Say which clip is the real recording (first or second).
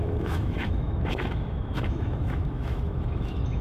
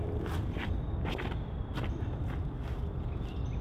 second